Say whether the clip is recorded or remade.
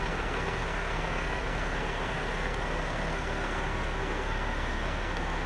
remade